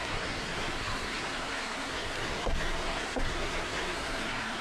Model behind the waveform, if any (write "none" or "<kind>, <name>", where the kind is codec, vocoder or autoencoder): codec, SNAC